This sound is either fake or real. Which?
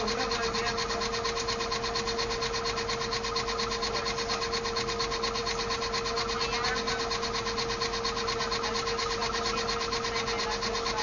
real